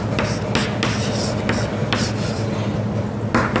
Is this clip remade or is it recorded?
recorded